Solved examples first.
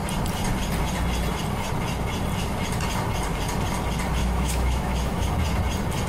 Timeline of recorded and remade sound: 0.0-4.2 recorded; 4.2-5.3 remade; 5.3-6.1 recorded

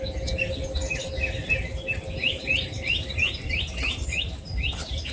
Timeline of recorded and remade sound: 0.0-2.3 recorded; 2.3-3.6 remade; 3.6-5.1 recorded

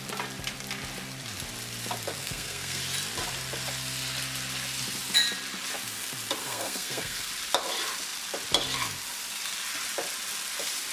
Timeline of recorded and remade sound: 0.0-2.2 recorded; 2.2-2.8 remade; 2.8-6.4 recorded; 6.4-7.3 remade; 7.3-10.9 recorded

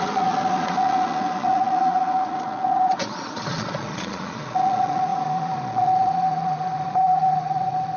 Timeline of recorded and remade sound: 0.0-8.0 remade